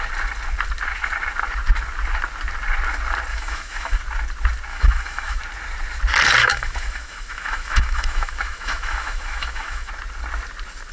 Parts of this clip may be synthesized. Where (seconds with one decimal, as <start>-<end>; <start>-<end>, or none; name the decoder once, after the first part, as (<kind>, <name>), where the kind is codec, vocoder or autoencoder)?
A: 3.3-4.0 (autoencoder, DAC-VAE); 4.7-5.4; 6.4-9.9

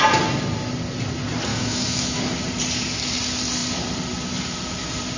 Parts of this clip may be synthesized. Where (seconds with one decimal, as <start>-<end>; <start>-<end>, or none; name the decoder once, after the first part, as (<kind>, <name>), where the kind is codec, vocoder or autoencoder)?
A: 1.5-2.2 (autoencoder, DAC-VAE)